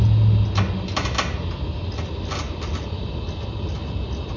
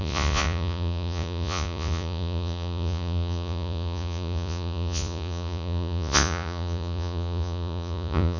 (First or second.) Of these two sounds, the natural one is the first